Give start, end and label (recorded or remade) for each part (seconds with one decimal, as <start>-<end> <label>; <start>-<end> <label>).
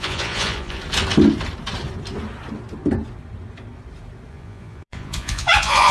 0.0-0.8 remade; 0.8-4.3 recorded; 4.3-5.9 remade